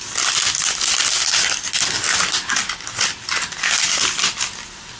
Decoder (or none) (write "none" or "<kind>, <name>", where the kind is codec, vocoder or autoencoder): none